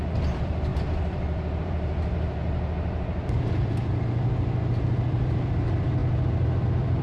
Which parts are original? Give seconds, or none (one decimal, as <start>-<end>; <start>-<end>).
2.4-4.9; 6.0-6.6